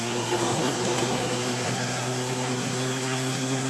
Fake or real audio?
fake